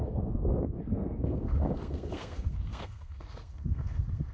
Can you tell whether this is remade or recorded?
remade